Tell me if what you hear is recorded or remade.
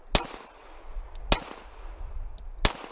recorded